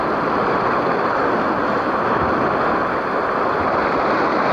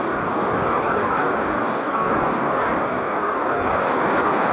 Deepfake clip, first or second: second